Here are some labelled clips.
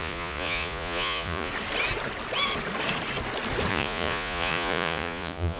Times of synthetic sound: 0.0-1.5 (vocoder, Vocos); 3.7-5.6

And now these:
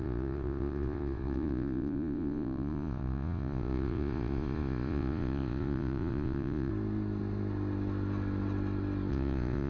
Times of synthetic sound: 0.0-6.7 (vocoder, Vocos); 9.1-9.7

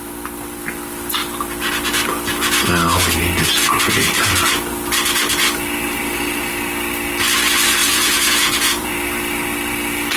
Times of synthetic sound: 7.8-8.9 (vocoder, Vocos)

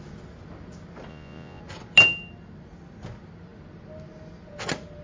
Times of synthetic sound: 1.1-1.6 (vocoder, Vocos)

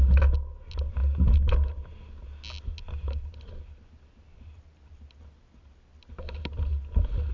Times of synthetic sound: none

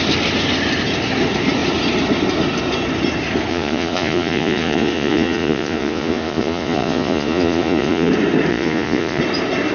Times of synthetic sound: 3.5-8.1 (vocoder, Vocos); 8.5-9.2

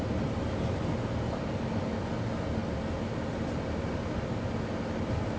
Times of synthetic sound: none

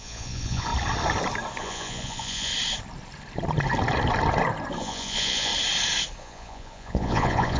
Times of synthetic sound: 0.0-0.7 (vocoder, Vocos); 1.6-2.5; 4.8-5.5; 6.2-7.6